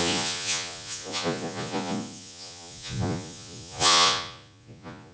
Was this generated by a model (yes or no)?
yes